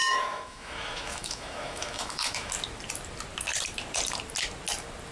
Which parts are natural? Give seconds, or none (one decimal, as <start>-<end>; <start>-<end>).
2.5-5.1